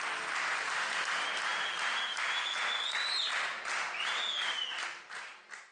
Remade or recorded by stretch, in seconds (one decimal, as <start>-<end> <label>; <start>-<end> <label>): 0.0-5.7 recorded